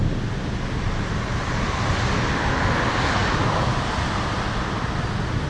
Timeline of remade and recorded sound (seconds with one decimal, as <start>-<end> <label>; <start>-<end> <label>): 0.0-5.5 recorded